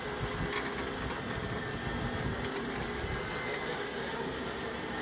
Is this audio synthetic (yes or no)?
no